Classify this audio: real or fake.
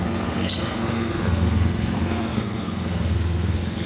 fake